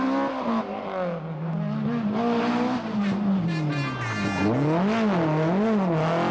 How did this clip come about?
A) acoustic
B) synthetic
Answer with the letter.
A